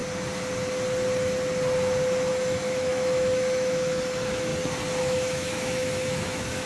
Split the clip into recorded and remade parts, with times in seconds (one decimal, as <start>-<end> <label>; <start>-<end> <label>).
0.0-2.3 recorded; 2.3-4.5 remade; 4.5-5.0 recorded; 5.0-6.7 remade